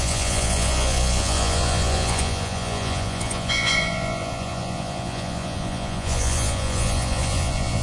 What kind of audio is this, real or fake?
fake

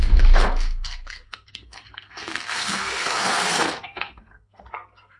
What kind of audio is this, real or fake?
fake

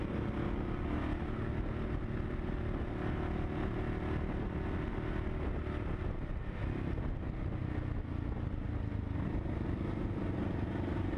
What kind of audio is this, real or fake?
real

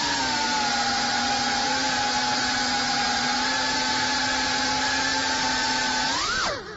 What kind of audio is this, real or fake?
real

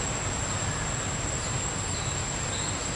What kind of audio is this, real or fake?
real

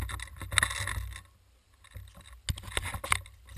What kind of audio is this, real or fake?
real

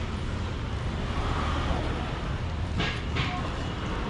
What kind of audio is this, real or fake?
real